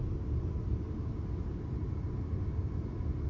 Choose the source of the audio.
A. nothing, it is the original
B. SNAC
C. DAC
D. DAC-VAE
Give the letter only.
A